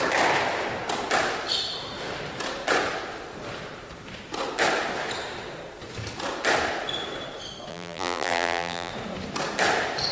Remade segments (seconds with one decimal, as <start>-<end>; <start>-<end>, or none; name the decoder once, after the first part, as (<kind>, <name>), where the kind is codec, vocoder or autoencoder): 7.7-8.9 (vocoder, BigVGAN v2)